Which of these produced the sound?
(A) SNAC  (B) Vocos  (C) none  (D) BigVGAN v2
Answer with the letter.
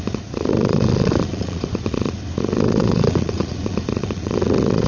B